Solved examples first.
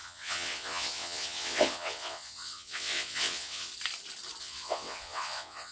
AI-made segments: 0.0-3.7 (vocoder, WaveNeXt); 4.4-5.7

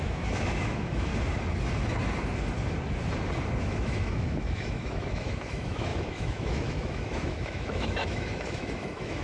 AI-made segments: 0.0-1.1 (autoencoder, DAC-VAE); 3.6-9.2

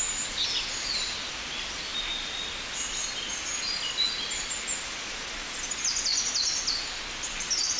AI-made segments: none

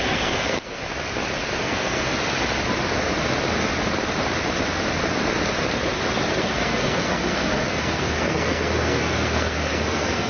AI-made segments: 0.0-0.8 (codec, SNAC); 1.6-2.1; 6.3-10.3

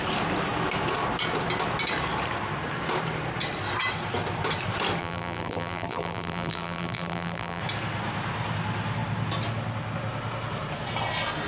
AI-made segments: 5.0-7.6 (vocoder, BigVGAN v2)

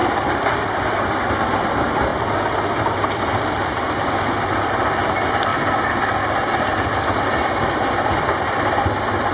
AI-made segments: 0.0-2.1 (vocoder, BigVGAN v2); 2.8-5.5; 6.2-9.3